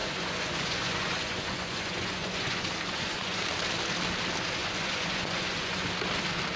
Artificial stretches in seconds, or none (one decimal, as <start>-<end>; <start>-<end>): 0.0-3.4; 4.6-5.9